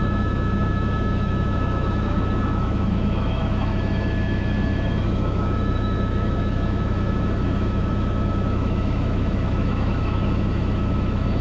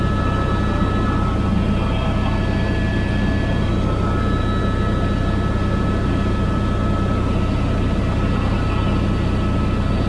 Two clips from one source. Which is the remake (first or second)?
first